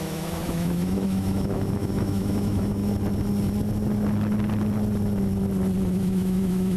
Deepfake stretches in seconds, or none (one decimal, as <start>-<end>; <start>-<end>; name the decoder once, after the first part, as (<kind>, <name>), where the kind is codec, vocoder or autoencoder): 0.0-2.8 (autoencoder, DAC-VAE); 5.9-6.8